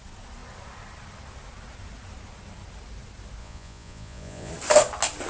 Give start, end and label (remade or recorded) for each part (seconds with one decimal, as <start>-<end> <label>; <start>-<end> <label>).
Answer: 0.0-3.4 recorded; 3.4-4.5 remade; 4.5-5.3 recorded